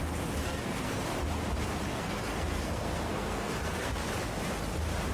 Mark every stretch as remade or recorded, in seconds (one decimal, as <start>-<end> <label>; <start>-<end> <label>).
0.0-0.4 recorded; 0.4-1.0 remade; 1.0-1.9 recorded; 1.9-4.1 remade; 4.1-5.1 recorded